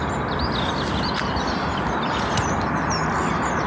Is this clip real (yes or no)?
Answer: yes